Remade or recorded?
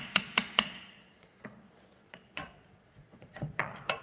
remade